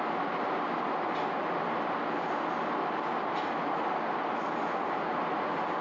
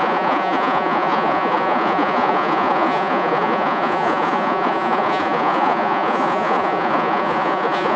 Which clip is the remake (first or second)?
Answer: second